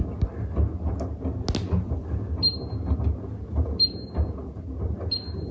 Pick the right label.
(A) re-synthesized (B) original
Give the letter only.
B